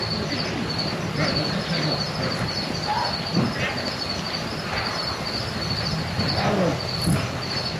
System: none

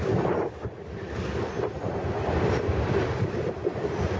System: none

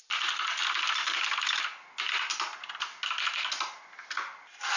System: none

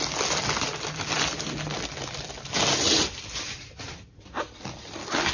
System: none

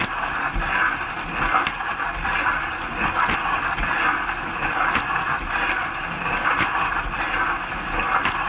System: none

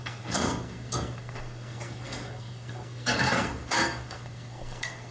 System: codec, SNAC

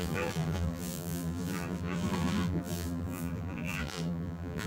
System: vocoder, BigVGAN v2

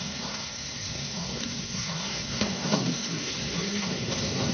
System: codec, SNAC